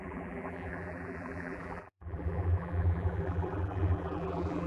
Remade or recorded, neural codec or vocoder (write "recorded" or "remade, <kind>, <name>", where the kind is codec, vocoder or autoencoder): remade, vocoder, BigVGAN v2